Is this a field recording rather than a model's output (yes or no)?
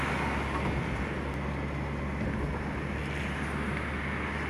yes